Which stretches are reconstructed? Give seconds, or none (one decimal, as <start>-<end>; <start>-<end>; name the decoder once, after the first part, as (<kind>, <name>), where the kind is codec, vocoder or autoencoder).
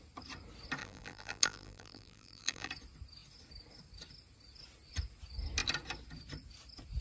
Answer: 0.8-2.7 (vocoder, BigVGAN v2)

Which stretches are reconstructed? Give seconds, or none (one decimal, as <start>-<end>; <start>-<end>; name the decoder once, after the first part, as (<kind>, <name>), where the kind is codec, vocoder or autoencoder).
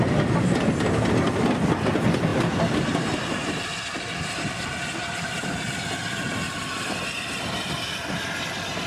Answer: 2.3-3.6 (vocoder, BigVGAN v2)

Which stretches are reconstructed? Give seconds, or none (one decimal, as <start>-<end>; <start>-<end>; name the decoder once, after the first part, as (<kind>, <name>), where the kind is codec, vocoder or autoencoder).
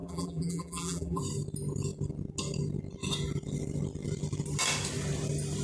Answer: 0.0-1.2 (vocoder, BigVGAN v2)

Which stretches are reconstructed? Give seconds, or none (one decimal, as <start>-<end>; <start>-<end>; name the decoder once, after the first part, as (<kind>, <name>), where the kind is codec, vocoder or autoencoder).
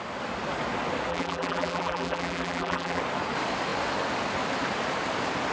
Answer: 1.1-3.0 (vocoder, BigVGAN v2)